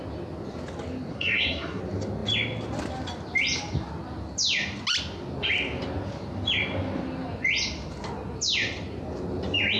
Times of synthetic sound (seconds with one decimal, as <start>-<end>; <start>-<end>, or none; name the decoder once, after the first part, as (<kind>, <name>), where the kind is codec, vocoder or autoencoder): 1.1-1.8 (codec, SNAC)